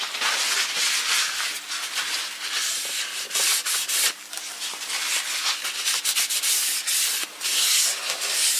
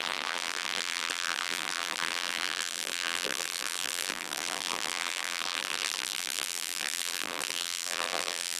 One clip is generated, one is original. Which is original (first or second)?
first